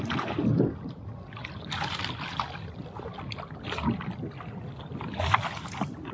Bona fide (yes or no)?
yes